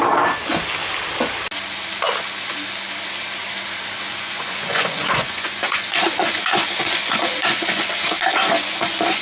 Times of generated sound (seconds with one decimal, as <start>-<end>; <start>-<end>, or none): 4.1-9.2